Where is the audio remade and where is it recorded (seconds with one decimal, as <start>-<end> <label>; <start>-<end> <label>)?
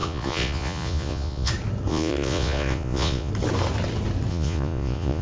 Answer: 0.0-1.5 remade; 1.5-1.9 recorded; 1.9-3.3 remade; 3.3-4.3 recorded; 4.3-5.2 remade